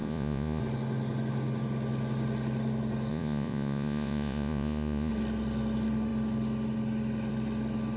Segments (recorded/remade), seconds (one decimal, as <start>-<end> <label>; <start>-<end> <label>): 0.0-0.6 remade; 0.6-3.1 recorded; 3.1-5.1 remade; 5.1-8.0 recorded